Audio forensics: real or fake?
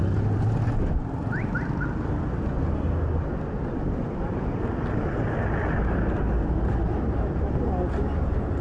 real